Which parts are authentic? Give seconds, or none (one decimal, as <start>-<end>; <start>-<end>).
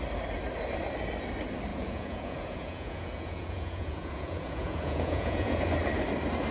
0.0-1.7; 5.6-6.5